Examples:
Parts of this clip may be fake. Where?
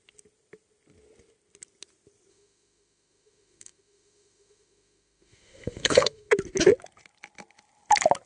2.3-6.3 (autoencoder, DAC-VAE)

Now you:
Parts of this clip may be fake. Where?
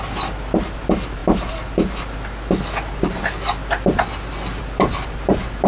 none